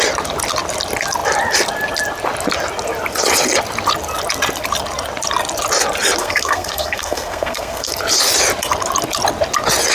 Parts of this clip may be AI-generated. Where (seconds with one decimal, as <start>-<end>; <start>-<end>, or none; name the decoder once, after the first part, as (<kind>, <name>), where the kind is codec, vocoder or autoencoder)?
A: 6.2-7.9 (codec, SNAC)